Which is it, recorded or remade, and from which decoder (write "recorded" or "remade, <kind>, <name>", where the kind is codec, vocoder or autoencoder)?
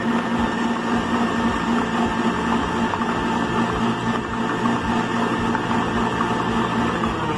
recorded